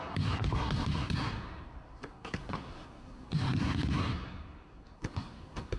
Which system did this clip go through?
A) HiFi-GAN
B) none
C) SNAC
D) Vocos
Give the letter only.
C